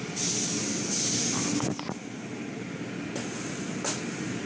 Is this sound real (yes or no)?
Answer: yes